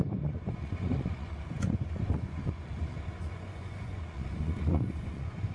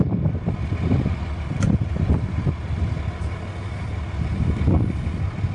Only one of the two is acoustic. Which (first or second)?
second